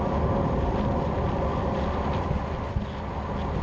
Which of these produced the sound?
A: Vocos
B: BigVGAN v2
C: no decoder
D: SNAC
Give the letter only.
C